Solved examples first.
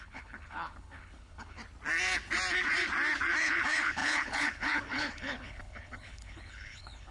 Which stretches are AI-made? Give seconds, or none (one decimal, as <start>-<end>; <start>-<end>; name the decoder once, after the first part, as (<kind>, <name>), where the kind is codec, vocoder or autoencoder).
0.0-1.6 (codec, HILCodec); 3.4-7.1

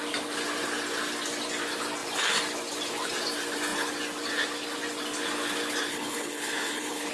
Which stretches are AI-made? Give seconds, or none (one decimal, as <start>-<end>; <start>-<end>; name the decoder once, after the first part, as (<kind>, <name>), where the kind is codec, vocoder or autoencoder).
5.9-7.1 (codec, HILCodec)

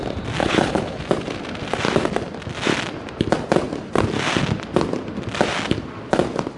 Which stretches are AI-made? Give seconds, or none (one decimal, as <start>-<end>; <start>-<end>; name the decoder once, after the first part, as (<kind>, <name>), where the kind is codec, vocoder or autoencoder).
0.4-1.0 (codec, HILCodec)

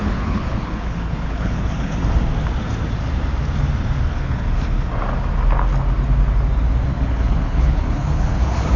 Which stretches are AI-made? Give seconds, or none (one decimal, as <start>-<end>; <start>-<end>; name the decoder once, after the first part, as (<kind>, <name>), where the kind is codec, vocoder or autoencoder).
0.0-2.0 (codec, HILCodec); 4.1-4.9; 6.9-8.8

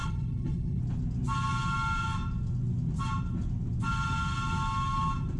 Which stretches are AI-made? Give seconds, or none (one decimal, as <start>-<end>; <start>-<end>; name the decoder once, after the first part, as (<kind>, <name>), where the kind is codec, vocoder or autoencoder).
0.0-0.8 (codec, HILCodec)

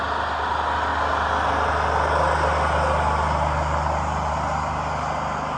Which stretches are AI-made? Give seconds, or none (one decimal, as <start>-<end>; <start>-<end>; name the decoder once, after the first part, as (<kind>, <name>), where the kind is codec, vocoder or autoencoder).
none

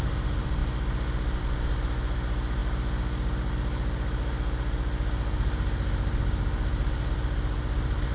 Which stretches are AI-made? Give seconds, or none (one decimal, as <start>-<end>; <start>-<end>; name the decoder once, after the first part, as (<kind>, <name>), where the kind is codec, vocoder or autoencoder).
none

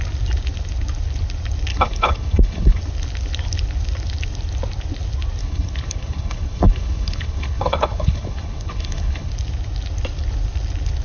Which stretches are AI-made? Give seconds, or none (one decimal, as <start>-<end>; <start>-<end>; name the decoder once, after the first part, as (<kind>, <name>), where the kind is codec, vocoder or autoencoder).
1.7-2.8 (codec, HILCodec); 5.4-9.3